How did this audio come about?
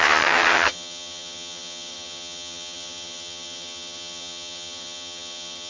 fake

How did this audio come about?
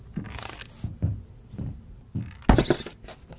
real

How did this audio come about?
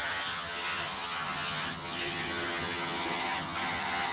fake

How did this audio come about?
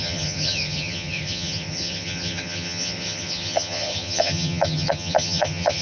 fake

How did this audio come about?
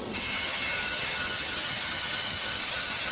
fake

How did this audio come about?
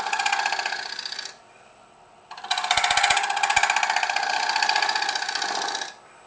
real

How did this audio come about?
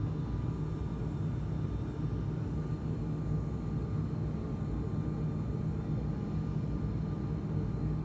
real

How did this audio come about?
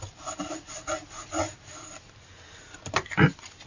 real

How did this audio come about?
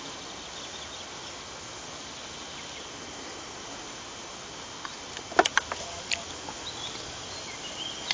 real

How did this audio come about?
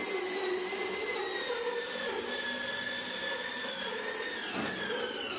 real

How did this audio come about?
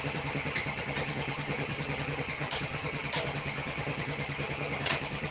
fake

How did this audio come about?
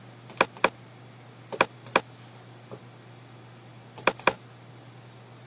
real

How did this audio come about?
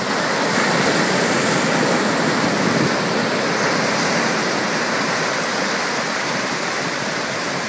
real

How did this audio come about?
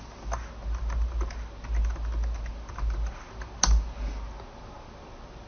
real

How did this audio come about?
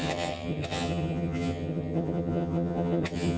fake